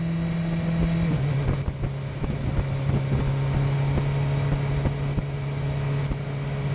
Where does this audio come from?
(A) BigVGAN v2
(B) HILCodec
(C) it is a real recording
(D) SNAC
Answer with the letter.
C